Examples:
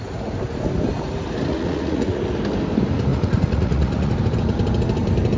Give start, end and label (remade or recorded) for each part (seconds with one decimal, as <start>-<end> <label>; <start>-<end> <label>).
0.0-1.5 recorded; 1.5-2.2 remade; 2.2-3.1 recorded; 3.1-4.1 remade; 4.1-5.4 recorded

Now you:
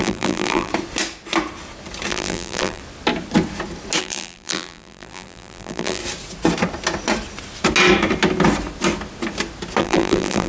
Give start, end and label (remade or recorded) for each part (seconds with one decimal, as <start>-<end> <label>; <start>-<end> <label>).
0.0-0.7 remade; 0.7-2.1 recorded; 2.1-2.8 remade; 2.8-4.0 recorded; 4.0-6.0 remade; 6.0-9.8 recorded; 9.8-10.5 remade

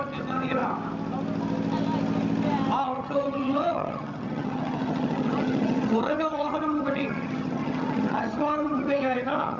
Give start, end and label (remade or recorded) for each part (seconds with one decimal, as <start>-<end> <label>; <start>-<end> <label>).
0.0-0.6 remade; 0.6-2.8 recorded; 2.8-9.6 remade

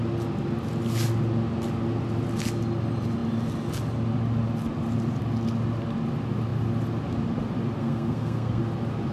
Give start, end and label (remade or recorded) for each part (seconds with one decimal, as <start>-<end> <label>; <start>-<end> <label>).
0.0-7.8 recorded; 7.8-8.6 remade; 8.6-9.1 recorded

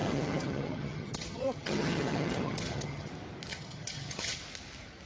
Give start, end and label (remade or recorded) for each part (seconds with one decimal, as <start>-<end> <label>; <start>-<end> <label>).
0.0-3.1 remade; 3.1-3.5 recorded; 3.5-4.4 remade; 4.4-5.1 recorded

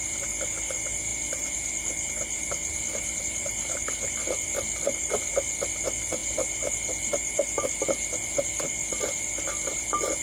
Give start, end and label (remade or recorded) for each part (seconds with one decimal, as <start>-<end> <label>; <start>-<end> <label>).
0.0-10.2 recorded

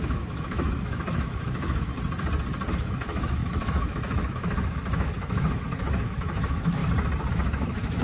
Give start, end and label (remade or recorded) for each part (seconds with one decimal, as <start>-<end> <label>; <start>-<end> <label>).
0.0-1.9 remade; 1.9-2.7 recorded; 2.7-6.8 remade; 6.8-7.3 recorded; 7.3-8.0 remade